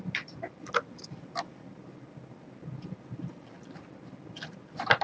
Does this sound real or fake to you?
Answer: real